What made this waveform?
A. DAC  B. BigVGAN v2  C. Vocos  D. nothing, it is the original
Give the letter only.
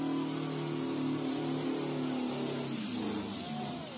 D